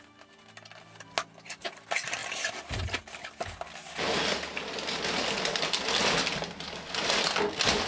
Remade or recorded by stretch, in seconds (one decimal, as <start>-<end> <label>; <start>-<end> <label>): 0.0-7.9 recorded